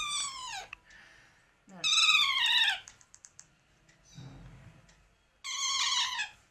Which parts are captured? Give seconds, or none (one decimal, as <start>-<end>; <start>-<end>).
0.0-0.4; 1.0-1.7; 3.5-6.5